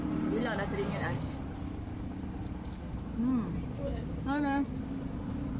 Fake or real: real